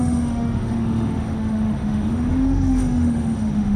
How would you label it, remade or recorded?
remade